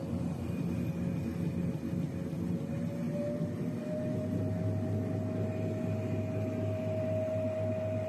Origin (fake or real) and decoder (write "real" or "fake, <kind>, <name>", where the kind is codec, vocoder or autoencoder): real